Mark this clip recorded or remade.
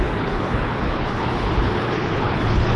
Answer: remade